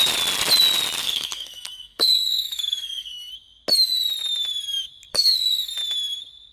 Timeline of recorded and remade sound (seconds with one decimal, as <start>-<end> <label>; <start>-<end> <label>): 0.0-1.0 recorded; 1.0-3.3 remade; 3.3-5.1 recorded; 5.1-5.7 remade; 5.7-6.5 recorded